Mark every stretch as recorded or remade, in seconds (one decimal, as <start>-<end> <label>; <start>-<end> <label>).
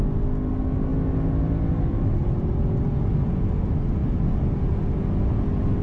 0.0-5.8 recorded